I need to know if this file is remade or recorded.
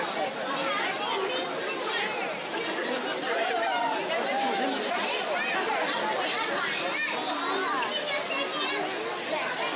recorded